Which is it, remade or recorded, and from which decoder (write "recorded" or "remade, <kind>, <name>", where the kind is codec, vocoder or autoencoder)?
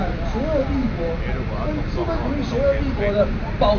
recorded